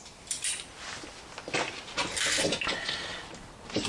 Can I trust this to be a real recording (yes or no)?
yes